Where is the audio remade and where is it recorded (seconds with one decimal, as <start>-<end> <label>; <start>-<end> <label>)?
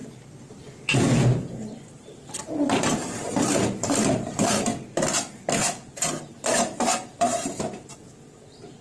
0.0-1.0 recorded; 1.0-4.7 remade; 4.7-5.3 recorded; 5.3-8.8 remade